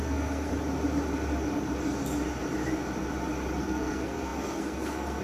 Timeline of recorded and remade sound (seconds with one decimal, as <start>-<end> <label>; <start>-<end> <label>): 0.0-0.5 remade; 0.5-3.6 recorded; 3.6-5.2 remade